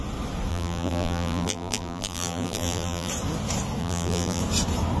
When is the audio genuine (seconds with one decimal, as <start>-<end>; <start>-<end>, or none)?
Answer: 0.0-0.5; 3.1-3.8; 4.4-5.0